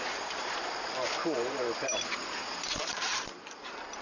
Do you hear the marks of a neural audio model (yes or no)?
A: yes